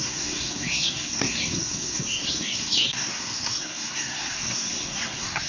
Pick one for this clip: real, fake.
fake